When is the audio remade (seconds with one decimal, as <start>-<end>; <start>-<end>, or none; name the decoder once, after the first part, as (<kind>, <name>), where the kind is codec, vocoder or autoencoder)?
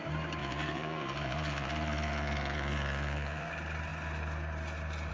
0.4-3.5 (vocoder, Vocos)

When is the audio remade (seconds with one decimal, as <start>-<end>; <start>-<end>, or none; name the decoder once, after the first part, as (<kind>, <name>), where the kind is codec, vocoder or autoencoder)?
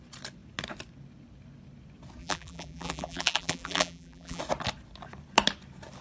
2.2-4.4 (vocoder, BigVGAN v2)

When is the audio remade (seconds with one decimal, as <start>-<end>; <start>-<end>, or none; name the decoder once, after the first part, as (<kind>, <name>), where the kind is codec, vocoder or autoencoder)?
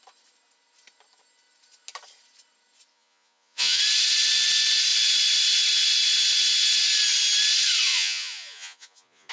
2.9-3.8 (vocoder, Vocos); 7.9-9.3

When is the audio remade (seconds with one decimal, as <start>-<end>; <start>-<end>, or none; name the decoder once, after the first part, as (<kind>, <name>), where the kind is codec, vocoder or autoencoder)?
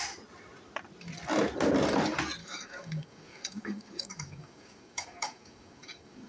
2.4-6.3 (codec, DAC)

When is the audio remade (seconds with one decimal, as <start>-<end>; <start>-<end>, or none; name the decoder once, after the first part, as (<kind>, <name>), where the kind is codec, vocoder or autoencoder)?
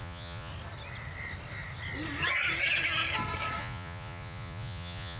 0.0-0.5 (vocoder, Vocos); 3.6-5.2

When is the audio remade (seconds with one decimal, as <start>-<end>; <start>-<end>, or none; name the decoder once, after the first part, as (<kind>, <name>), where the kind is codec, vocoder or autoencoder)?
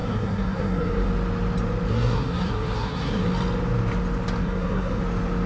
0.0-1.1 (codec, SNAC); 1.9-3.3; 4.4-5.0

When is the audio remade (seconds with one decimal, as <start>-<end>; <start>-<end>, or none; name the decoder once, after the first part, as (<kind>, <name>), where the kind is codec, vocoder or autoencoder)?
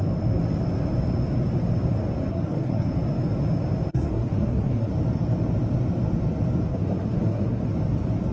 2.3-2.9 (codec, SNAC); 3.9-4.9; 6.7-7.7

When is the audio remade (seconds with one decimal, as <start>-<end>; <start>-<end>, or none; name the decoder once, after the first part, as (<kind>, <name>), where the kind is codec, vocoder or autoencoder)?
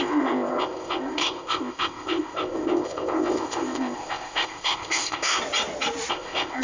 0.0-5.4 (codec, ZipCodec); 6.1-6.6